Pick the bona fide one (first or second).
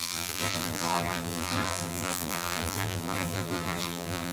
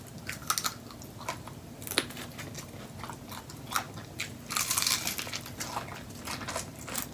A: second